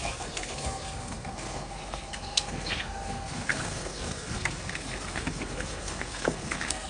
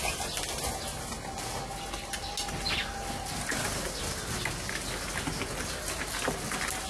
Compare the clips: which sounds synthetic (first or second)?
first